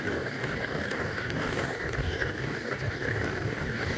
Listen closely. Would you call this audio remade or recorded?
remade